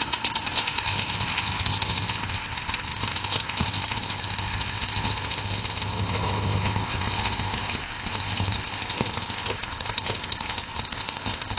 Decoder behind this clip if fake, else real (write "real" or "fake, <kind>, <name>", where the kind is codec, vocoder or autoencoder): fake, codec, ZipCodec